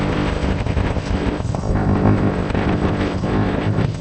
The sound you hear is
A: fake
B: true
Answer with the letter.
A